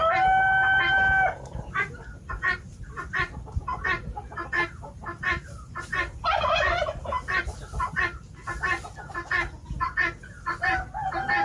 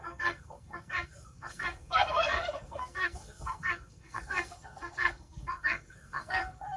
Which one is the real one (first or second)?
first